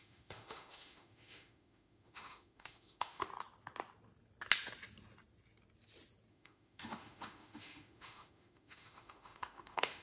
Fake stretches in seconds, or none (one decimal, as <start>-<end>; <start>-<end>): 0.0-3.3; 6.3-10.0